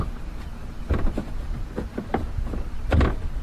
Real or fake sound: real